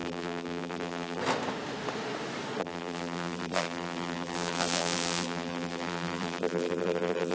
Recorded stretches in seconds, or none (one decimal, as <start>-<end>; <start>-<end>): 1.2-2.6